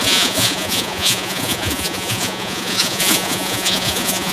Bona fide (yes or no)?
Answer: no